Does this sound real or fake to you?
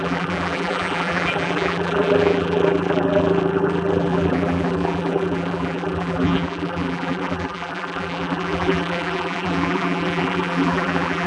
fake